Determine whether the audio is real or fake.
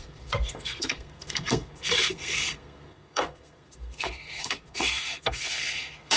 fake